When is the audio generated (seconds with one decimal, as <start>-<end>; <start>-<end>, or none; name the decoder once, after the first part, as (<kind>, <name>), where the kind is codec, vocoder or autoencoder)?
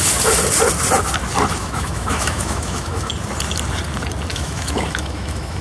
1.6-3.1 (autoencoder, DAC-VAE); 4.3-5.6